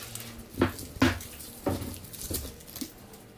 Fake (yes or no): no